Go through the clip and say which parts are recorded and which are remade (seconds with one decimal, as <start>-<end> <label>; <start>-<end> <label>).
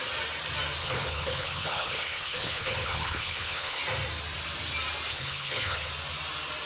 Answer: 0.0-0.8 recorded; 0.8-3.8 remade; 3.8-5.1 recorded; 5.1-5.9 remade; 5.9-6.7 recorded